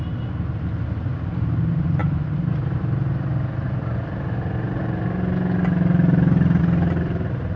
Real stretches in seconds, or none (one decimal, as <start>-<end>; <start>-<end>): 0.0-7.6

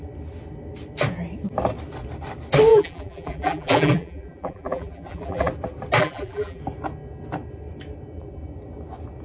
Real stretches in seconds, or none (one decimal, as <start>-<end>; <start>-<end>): 0.0-2.7; 5.5-6.0; 6.6-9.2

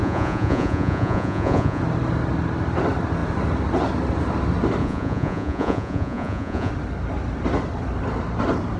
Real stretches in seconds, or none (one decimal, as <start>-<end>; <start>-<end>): 1.8-4.8; 6.7-8.8

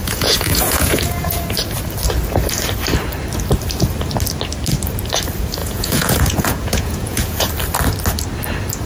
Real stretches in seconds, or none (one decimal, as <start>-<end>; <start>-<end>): 1.4-5.6; 7.5-8.9